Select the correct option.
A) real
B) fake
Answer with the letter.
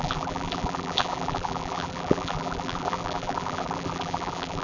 B